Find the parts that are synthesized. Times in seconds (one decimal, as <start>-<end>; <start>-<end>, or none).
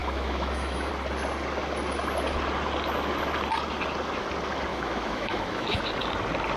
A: 0.0-0.9; 4.7-5.8